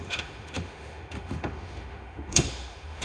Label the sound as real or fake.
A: fake